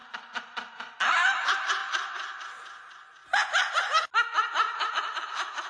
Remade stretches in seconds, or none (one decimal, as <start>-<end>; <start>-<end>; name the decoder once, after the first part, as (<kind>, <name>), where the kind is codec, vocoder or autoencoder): 0.0-3.2 (vocoder, BigVGAN v2); 4.9-5.7